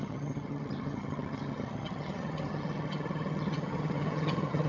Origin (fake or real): fake